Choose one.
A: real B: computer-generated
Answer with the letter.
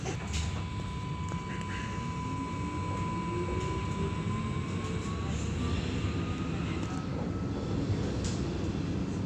A